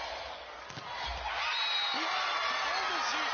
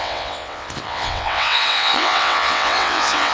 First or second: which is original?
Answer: first